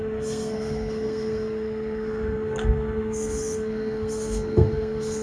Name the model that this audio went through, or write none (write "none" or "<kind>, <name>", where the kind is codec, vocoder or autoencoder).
codec, SNAC